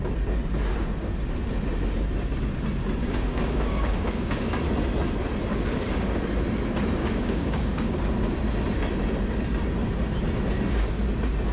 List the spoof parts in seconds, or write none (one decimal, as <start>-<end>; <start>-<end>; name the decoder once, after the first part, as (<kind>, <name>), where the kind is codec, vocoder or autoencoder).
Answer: 3.0-4.5 (codec, DAC); 5.5-6.2; 7.0-7.9